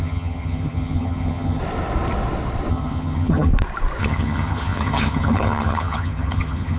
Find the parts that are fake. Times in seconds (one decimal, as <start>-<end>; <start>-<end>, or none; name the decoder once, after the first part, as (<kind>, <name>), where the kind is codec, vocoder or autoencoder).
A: 0.0-1.6 (vocoder, HiFi-GAN); 2.7-3.5; 4.0-6.8